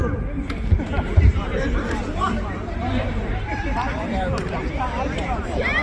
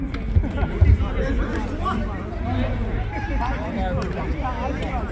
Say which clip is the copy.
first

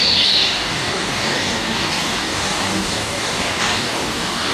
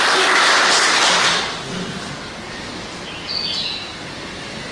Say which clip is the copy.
first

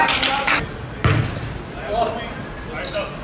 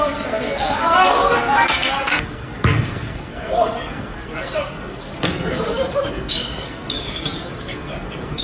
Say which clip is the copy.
second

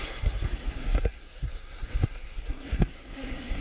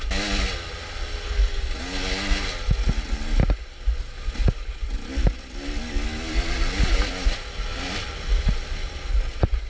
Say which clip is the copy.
first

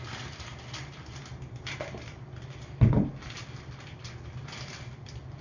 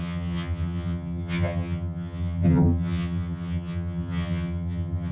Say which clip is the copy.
second